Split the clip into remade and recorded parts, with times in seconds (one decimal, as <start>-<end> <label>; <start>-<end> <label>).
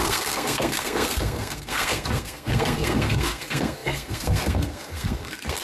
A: 0.0-5.6 remade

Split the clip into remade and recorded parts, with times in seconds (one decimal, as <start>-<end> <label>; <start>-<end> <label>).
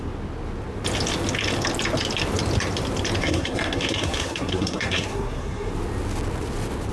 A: 0.0-3.2 recorded; 3.2-5.7 remade; 5.7-6.9 recorded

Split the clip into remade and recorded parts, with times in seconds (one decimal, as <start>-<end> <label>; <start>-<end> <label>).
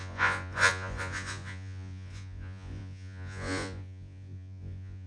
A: 0.0-5.1 remade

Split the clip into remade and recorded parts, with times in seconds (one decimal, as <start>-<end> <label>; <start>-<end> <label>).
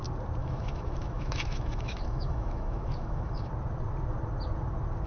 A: 0.0-0.4 recorded; 0.4-3.5 remade; 3.5-5.1 recorded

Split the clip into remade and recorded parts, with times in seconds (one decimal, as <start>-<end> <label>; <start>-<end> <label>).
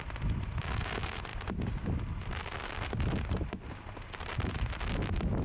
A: 0.0-5.4 recorded